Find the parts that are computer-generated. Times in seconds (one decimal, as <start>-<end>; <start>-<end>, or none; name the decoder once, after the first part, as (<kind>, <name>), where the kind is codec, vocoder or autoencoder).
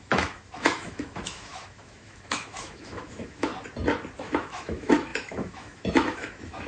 0.0-3.5 (autoencoder, DAC-VAE); 4.2-6.7